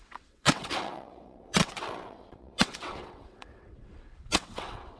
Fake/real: fake